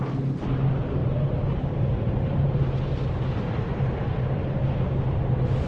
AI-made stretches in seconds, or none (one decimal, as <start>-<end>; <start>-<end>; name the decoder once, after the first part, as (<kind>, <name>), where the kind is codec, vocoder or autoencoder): 1.0-4.4 (vocoder, BigVGAN v2)